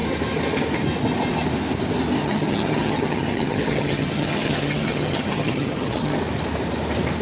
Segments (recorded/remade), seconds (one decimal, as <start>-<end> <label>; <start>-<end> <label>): 0.0-2.2 recorded; 2.2-6.2 remade; 6.2-7.2 recorded